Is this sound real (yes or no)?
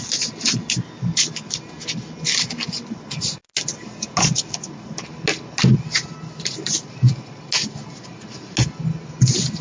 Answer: yes